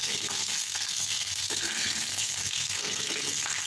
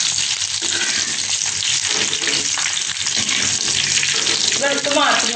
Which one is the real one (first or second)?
second